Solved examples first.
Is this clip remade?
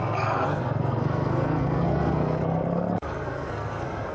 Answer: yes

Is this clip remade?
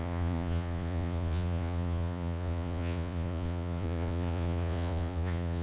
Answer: yes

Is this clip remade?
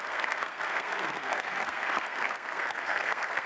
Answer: yes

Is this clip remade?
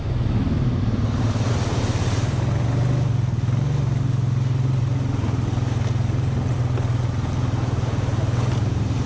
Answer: no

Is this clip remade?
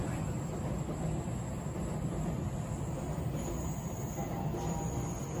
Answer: no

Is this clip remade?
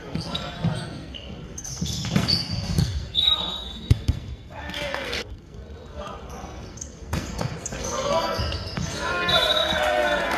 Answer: yes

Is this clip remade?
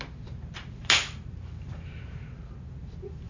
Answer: yes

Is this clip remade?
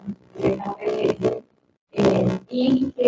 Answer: no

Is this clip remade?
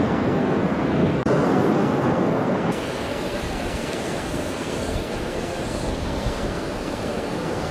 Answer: yes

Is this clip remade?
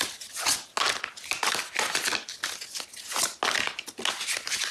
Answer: no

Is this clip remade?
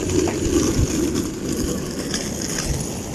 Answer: no